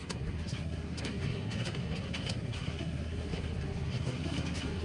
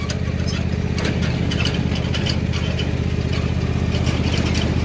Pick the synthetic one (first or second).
first